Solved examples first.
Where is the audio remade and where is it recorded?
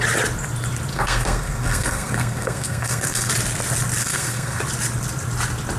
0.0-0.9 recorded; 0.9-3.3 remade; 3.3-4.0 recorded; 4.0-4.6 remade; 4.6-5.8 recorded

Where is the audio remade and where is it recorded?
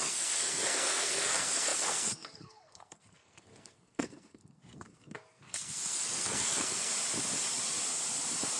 0.0-6.9 remade; 6.9-8.6 recorded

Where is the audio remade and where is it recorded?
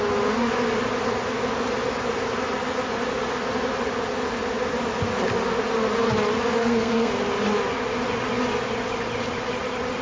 0.0-6.6 recorded; 6.6-7.1 remade; 7.1-10.0 recorded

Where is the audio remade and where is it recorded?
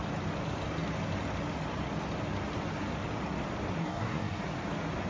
0.0-3.8 recorded; 3.8-4.4 remade; 4.4-5.1 recorded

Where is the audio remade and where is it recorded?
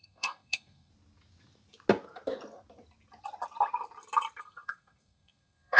0.0-0.9 remade; 0.9-4.4 recorded; 4.4-5.8 remade